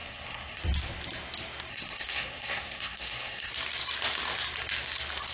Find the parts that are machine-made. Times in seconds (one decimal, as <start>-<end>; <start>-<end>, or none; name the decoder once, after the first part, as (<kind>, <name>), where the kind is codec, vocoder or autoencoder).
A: 0.0-0.6 (codec, SNAC); 1.7-3.5